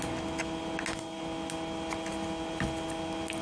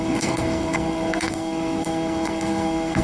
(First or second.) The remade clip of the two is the second